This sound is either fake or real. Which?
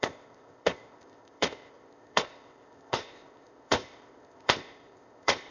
fake